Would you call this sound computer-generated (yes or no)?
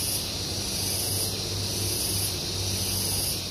no